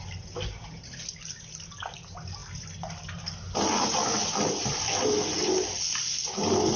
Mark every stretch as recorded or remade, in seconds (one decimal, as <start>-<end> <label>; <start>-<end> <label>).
0.0-6.8 recorded

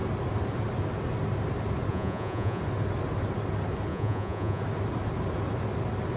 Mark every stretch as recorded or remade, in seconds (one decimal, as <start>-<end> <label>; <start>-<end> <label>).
0.0-1.9 recorded; 1.9-2.6 remade; 2.6-3.9 recorded; 3.9-4.6 remade; 4.6-6.2 recorded

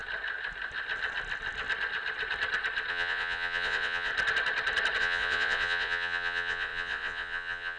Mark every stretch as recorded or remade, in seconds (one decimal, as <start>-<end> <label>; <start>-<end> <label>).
0.0-2.9 recorded; 2.9-4.1 remade; 4.1-5.0 recorded; 5.0-7.8 remade

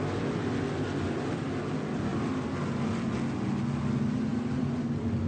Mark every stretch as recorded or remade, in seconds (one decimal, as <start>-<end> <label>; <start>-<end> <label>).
0.0-5.3 recorded

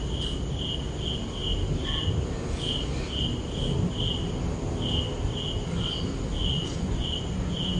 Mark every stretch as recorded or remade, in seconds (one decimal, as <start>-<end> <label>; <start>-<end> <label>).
0.0-6.4 recorded; 6.4-7.8 remade

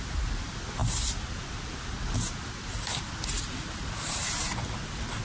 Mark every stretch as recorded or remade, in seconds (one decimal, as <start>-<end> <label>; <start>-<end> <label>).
0.0-5.2 recorded

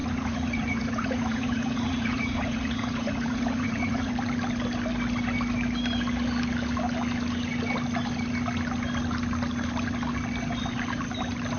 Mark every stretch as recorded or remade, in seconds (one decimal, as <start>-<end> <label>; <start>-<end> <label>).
0.0-4.1 remade; 4.1-11.6 recorded